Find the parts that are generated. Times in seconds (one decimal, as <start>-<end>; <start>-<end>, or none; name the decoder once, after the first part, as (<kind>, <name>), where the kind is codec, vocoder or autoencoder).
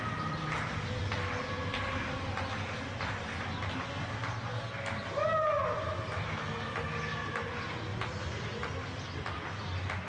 none